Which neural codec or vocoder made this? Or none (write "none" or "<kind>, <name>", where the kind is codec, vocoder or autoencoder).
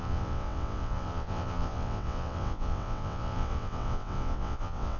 vocoder, WaveNeXt